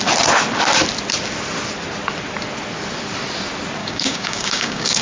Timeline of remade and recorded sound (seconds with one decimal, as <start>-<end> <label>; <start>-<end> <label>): 0.0-3.8 recorded; 3.8-5.0 remade